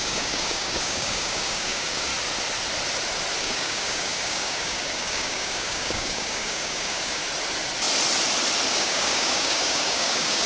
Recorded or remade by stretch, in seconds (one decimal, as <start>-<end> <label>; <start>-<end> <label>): 0.0-2.1 remade; 2.1-3.4 recorded; 3.4-7.2 remade; 7.2-8.7 recorded; 8.7-10.5 remade

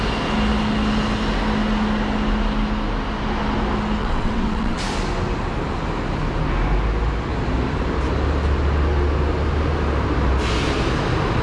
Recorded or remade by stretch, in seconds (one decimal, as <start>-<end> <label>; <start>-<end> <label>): 0.0-4.0 recorded; 4.0-4.8 remade; 4.8-11.4 recorded

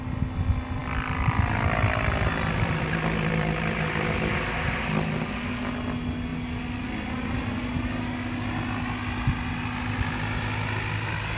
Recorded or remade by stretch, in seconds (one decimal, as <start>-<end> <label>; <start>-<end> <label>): 0.0-0.8 recorded; 0.8-5.4 remade; 5.4-6.3 recorded; 6.3-8.6 remade; 8.6-11.4 recorded

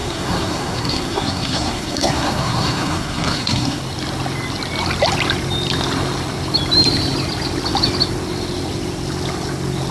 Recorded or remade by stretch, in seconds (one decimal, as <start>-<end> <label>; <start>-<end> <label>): 0.0-3.8 remade; 3.8-9.9 recorded